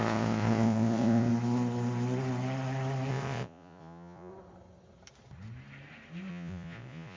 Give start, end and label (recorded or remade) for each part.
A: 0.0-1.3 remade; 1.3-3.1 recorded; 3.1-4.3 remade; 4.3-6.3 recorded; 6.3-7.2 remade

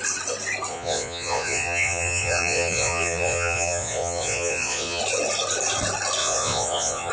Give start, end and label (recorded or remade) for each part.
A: 0.0-0.7 recorded; 0.7-5.0 remade; 5.0-6.2 recorded; 6.2-7.1 remade

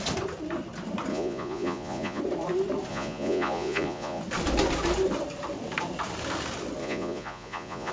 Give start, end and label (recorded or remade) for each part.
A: 0.0-1.1 recorded; 1.1-2.2 remade; 2.2-2.9 recorded; 2.9-4.2 remade; 4.2-6.8 recorded; 6.8-7.9 remade

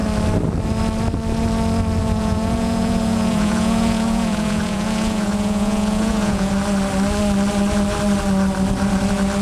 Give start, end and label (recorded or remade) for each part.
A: 0.0-2.0 recorded; 2.0-6.5 remade; 6.5-9.4 recorded

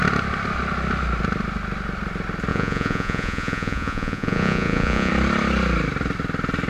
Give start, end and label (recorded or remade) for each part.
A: 0.0-2.5 recorded; 2.5-5.1 remade; 5.1-6.7 recorded

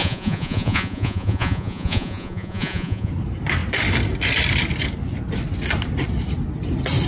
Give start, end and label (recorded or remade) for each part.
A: 0.0-3.1 remade; 3.1-7.1 recorded

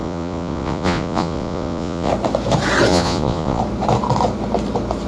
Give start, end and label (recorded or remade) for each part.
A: 0.0-2.1 remade; 2.1-2.9 recorded; 2.9-3.6 remade; 3.6-5.1 recorded